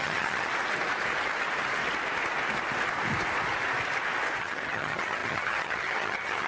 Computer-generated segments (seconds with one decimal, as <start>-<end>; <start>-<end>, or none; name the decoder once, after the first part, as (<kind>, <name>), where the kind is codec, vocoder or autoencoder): 0.0-0.5 (vocoder, HiFi-GAN); 4.4-6.5